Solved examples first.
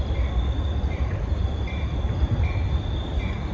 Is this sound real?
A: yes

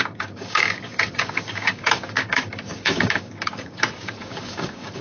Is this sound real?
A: no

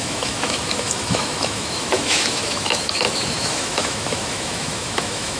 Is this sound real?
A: no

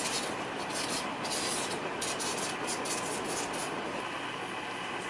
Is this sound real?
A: yes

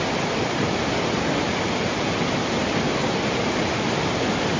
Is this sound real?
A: yes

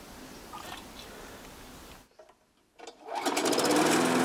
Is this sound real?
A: yes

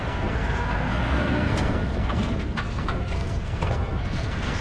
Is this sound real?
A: no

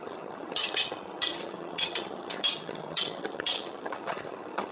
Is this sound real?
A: no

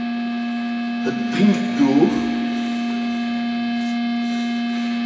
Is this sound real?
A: yes